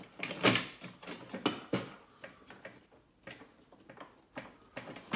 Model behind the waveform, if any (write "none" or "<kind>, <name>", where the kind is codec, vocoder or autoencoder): none